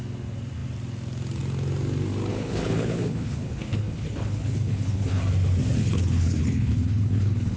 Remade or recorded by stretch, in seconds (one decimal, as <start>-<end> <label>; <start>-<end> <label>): 0.0-2.3 recorded; 2.3-5.2 remade; 5.2-5.8 recorded; 5.8-7.6 remade